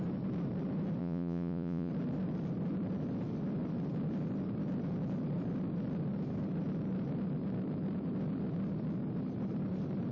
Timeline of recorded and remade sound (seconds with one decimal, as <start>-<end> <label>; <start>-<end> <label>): 0.0-1.0 recorded; 1.0-1.9 remade; 1.9-10.1 recorded